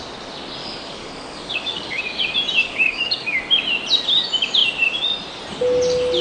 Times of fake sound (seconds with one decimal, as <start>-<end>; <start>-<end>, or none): 0.6-2.0; 2.6-3.4